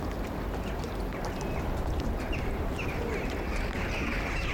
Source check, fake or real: real